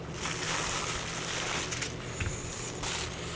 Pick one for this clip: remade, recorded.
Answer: recorded